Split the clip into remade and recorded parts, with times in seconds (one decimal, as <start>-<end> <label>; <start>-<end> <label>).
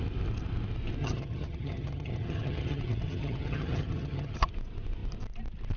0.0-1.0 recorded; 1.0-4.5 remade; 4.5-5.8 recorded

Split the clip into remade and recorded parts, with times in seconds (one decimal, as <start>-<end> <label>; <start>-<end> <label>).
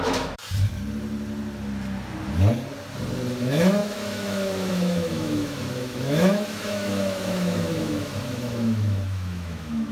0.0-0.4 remade; 0.4-3.4 recorded; 3.4-9.9 remade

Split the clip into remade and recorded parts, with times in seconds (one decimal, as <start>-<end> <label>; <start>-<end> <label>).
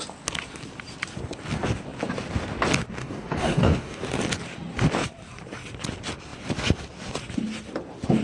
0.0-3.0 recorded; 3.0-4.0 remade; 4.0-8.2 recorded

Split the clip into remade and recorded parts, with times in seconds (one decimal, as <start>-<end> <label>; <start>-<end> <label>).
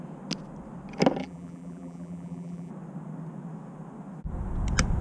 0.0-1.2 recorded; 1.2-2.7 remade; 2.7-5.0 recorded